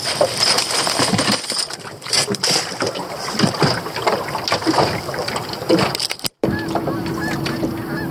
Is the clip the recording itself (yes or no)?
no